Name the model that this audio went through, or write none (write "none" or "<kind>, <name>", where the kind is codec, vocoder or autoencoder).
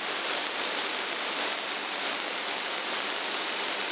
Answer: vocoder, BigVGAN v2